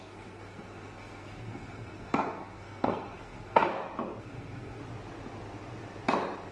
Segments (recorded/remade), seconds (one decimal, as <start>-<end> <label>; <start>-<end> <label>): 0.0-3.7 remade; 3.7-4.2 recorded; 4.2-4.8 remade; 4.8-6.5 recorded